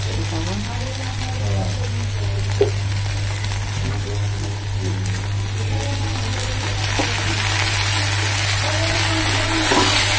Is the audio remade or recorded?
recorded